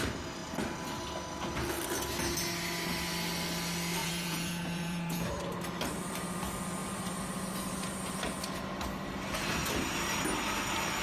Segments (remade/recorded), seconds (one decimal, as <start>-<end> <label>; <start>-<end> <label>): 0.0-4.0 recorded; 4.0-5.3 remade; 5.3-11.0 recorded